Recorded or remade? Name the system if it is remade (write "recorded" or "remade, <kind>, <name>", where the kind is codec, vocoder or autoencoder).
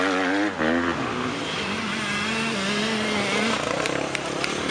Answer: recorded